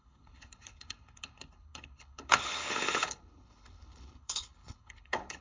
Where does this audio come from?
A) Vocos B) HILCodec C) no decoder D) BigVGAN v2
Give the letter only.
B